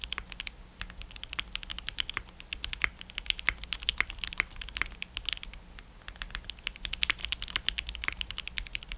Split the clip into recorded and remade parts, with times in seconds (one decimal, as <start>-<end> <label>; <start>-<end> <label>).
0.0-9.0 recorded